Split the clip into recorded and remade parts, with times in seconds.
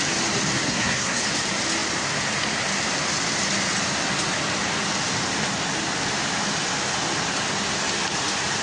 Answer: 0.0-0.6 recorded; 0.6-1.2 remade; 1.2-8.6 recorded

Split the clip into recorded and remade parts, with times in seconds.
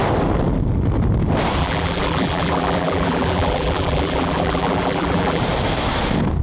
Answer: 0.0-1.6 recorded; 1.6-5.4 remade; 5.4-6.4 recorded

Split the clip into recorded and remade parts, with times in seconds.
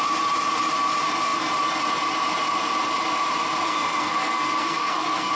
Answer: 0.0-3.6 recorded; 3.6-5.3 remade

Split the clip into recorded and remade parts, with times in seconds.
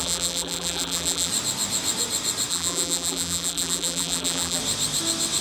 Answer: 0.0-1.3 remade; 1.3-2.5 recorded; 2.5-4.6 remade; 4.6-5.4 recorded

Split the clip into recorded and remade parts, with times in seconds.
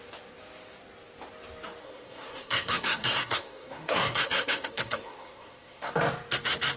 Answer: 0.0-1.8 recorded; 1.8-5.9 remade; 5.9-6.8 recorded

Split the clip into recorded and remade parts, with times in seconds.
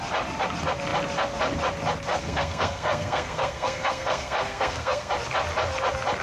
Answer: 0.0-2.2 recorded; 2.2-5.1 remade; 5.1-6.2 recorded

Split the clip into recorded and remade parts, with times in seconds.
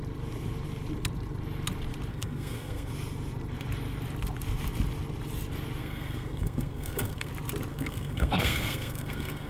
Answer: 0.0-2.1 recorded; 2.1-2.9 remade; 2.9-5.8 recorded; 5.8-7.3 remade; 7.3-7.7 recorded; 7.7-9.5 remade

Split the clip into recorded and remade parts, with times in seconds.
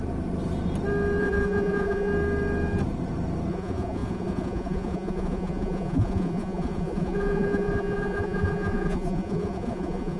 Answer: 0.0-1.2 recorded; 1.2-2.1 remade; 2.1-3.5 recorded; 3.5-10.2 remade